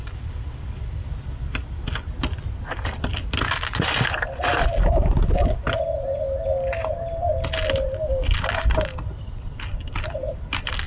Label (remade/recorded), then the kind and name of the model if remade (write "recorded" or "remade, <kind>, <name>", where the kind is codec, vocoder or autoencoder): recorded